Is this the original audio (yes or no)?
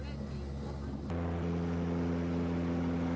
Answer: yes